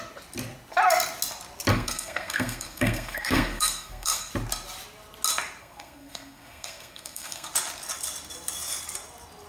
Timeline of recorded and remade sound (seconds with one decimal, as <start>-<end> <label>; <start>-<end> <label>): 0.0-1.7 recorded; 1.7-4.3 remade; 4.3-5.6 recorded; 5.6-7.5 remade; 7.5-9.5 recorded